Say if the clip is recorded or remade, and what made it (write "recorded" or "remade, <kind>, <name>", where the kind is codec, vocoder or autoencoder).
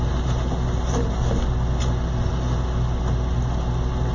recorded